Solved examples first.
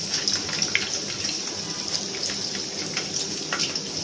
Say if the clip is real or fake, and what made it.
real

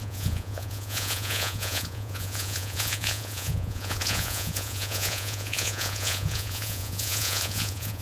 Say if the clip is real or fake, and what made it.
fake, vocoder, Vocos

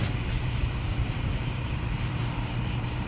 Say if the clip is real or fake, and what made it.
fake, vocoder, BigVGAN v2